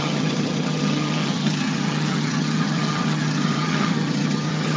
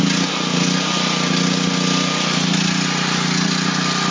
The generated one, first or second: first